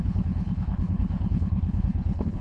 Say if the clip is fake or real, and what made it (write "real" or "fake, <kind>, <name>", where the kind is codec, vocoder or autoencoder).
fake, codec, HILCodec